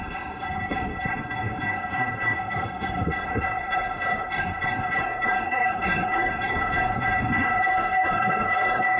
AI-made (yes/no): yes